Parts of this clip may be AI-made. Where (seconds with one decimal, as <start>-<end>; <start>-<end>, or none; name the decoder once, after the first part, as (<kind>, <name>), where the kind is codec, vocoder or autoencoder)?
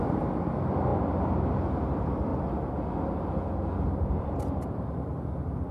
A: 0.0-0.9 (vocoder, BigVGAN v2); 1.9-2.3; 4.2-5.7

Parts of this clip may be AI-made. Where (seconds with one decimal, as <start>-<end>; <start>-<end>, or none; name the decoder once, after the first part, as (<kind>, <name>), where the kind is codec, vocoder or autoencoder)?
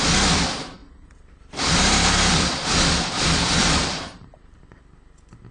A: 0.8-2.7 (vocoder, BigVGAN v2); 3.6-4.6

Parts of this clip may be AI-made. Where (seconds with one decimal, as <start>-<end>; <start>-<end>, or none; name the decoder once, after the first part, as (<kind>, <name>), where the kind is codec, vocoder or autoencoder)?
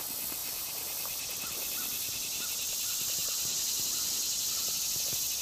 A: 0.4-2.4 (vocoder, BigVGAN v2); 3.2-4.8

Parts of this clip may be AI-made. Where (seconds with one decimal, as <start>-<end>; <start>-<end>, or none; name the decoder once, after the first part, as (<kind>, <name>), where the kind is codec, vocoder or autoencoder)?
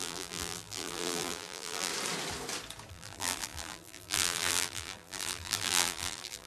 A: 0.0-1.9 (vocoder, BigVGAN v2); 2.9-6.5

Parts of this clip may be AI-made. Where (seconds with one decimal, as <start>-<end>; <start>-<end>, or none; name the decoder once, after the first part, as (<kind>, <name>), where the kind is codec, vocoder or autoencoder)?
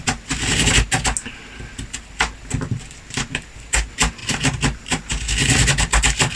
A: 4.2-5.1 (vocoder, BigVGAN v2)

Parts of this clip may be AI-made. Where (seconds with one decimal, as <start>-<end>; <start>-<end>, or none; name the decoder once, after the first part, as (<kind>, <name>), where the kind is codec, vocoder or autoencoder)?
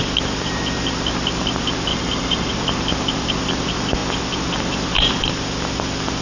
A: 1.9-2.5 (vocoder, BigVGAN v2)